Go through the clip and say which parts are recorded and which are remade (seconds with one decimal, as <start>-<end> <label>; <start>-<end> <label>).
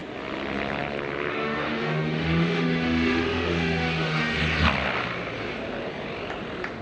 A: 0.0-1.3 recorded; 1.3-4.4 remade; 4.4-6.8 recorded